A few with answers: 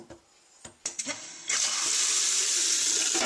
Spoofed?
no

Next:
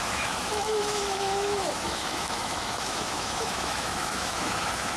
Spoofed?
yes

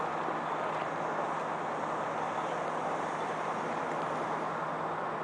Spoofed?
no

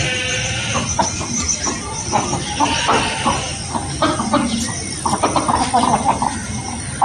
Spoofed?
no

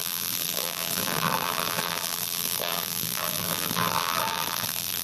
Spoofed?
yes